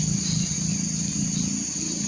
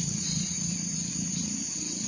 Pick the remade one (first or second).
second